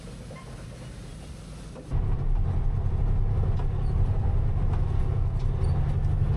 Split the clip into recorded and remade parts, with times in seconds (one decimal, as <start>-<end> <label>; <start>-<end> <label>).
0.0-6.4 recorded